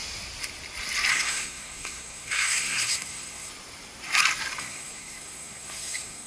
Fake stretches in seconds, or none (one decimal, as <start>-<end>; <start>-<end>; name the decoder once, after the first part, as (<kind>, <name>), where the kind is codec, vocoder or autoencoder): 1.1-3.5 (codec, SNAC); 4.6-6.3